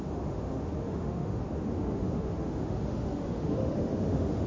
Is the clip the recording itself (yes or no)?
no